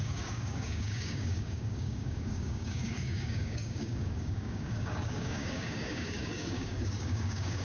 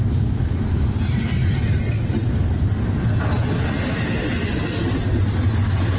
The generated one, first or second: first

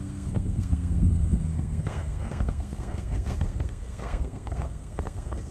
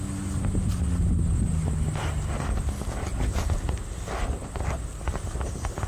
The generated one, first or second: first